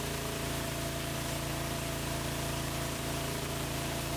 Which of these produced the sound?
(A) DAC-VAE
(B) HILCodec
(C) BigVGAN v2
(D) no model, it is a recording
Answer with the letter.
C